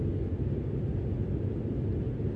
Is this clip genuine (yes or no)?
yes